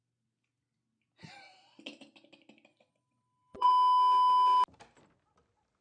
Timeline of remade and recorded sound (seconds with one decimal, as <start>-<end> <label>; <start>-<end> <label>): 0.0-2.7 recorded; 2.7-3.7 remade; 3.7-5.8 recorded

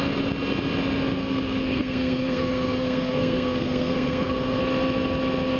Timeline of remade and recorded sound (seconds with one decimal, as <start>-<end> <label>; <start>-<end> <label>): 0.0-1.2 recorded; 1.2-4.6 remade; 4.6-5.6 recorded